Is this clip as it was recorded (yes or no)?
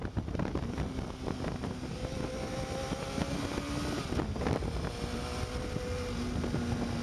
yes